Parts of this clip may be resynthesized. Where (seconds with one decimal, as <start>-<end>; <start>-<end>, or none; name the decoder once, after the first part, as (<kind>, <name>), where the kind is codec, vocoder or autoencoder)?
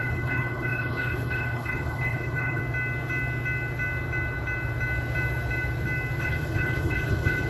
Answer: 0.0-2.6 (codec, HILCodec); 6.2-7.5